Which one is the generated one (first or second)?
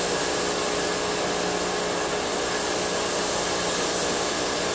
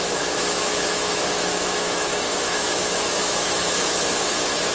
second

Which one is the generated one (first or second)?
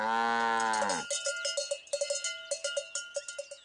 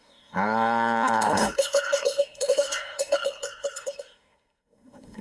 second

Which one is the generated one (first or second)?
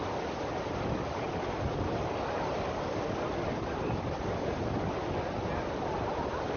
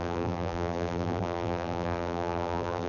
second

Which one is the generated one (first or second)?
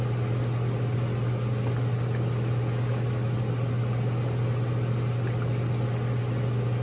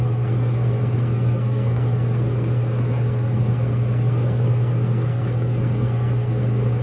second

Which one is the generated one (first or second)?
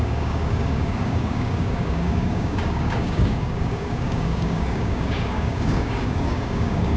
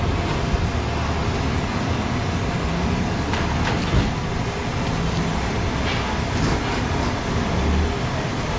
first